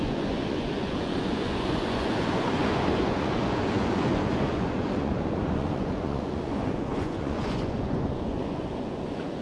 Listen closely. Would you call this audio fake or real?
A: fake